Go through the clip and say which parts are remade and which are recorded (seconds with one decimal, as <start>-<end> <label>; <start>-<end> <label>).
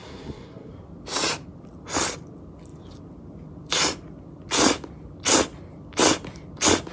0.0-0.7 remade; 0.7-6.9 recorded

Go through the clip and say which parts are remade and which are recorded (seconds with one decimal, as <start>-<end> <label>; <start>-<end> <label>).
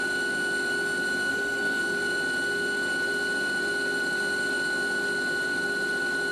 0.0-1.3 recorded; 1.3-1.8 remade; 1.8-6.3 recorded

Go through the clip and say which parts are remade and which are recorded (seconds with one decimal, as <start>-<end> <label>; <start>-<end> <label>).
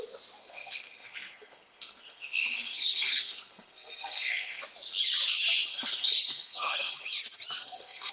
0.0-0.4 recorded; 0.4-4.6 remade; 4.6-5.7 recorded; 5.7-6.9 remade; 6.9-7.6 recorded; 7.6-8.1 remade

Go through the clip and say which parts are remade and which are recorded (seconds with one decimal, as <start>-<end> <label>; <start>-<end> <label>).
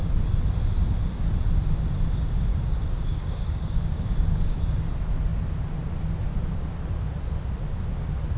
0.0-2.5 recorded; 2.5-4.6 remade; 4.6-8.4 recorded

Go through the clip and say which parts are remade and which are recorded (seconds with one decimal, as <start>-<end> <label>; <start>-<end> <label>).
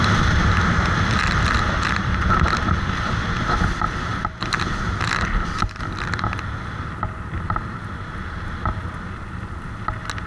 0.0-10.3 recorded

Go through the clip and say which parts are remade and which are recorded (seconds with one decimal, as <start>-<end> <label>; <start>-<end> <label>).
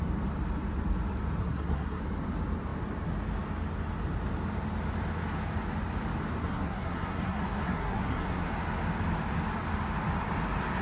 0.0-1.4 recorded; 1.4-2.0 remade; 2.0-6.4 recorded; 6.4-8.5 remade; 8.5-10.8 recorded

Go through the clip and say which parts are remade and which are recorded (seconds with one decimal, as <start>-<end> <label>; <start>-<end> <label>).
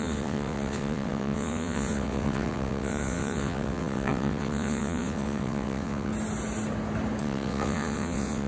0.0-6.1 remade; 6.1-7.2 recorded; 7.2-8.5 remade